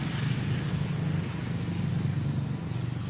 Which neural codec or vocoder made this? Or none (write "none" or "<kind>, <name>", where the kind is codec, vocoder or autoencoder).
none